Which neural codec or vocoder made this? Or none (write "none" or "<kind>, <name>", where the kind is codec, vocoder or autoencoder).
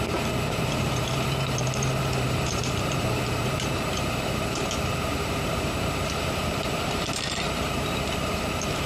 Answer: vocoder, BigVGAN v2